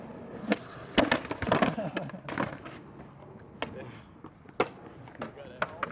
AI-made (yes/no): no